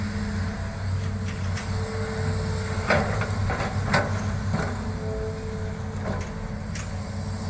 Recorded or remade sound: recorded